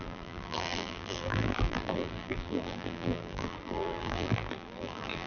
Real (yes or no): no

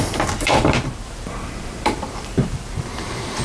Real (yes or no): no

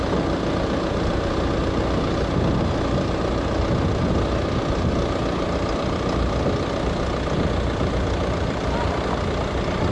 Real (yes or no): yes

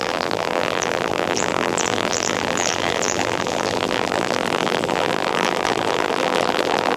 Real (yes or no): no